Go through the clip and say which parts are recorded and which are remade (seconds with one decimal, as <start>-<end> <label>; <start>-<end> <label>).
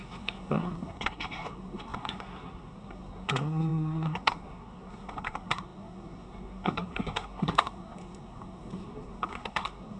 0.0-10.0 remade